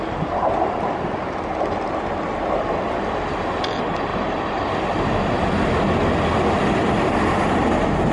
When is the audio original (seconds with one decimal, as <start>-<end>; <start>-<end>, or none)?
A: 0.0-8.1